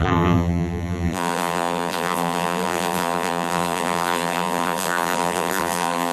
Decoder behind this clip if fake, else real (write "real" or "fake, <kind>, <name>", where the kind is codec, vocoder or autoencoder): fake, vocoder, BigVGAN v2